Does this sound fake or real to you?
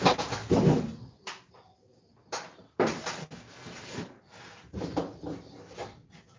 real